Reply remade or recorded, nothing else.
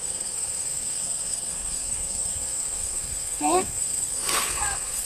remade